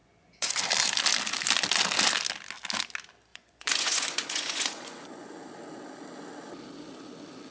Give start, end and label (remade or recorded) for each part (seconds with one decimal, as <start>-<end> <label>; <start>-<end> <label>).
0.0-0.6 remade; 0.6-3.3 recorded; 3.3-5.3 remade; 5.3-7.5 recorded